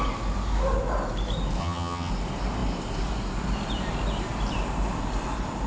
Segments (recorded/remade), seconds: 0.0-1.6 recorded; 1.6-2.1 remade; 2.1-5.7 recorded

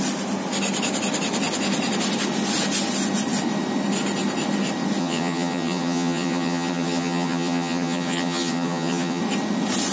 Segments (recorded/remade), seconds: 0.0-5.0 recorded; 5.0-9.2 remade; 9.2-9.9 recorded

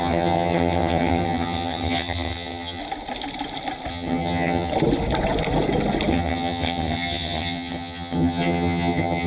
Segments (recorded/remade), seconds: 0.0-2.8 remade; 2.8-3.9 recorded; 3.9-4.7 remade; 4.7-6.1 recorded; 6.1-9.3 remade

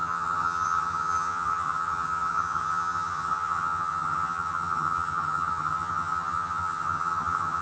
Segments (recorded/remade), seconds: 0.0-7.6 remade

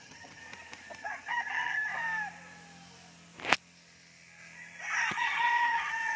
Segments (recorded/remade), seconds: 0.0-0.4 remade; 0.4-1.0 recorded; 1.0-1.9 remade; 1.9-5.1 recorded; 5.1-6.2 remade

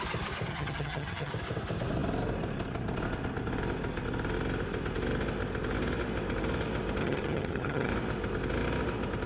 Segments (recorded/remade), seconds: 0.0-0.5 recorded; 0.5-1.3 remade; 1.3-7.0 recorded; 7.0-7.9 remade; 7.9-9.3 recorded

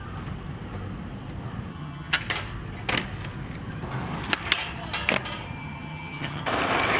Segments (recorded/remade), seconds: 0.0-1.7 recorded; 1.7-2.2 remade; 2.2-5.6 recorded; 5.6-6.4 remade; 6.4-7.0 recorded